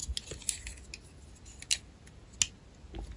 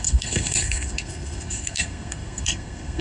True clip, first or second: first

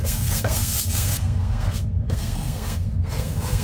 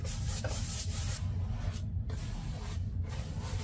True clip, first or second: second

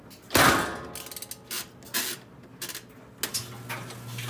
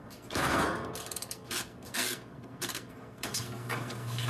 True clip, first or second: first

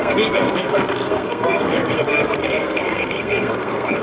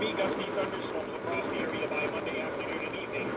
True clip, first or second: second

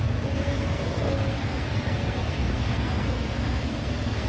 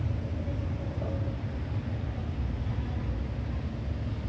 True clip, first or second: second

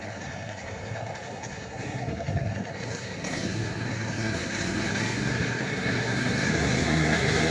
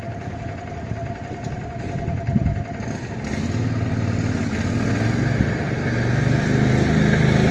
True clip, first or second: second